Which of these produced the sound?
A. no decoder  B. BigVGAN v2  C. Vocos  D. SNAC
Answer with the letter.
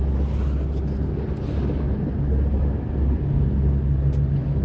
A